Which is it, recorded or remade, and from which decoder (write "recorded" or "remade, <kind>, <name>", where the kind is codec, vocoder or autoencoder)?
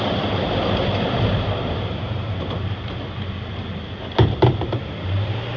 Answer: remade, vocoder, BigVGAN v2